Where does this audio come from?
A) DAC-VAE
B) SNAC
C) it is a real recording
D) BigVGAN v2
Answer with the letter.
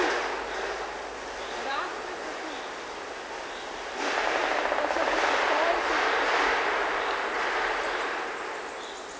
C